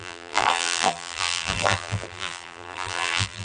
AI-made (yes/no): yes